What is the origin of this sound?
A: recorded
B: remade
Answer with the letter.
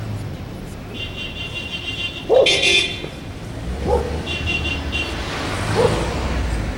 A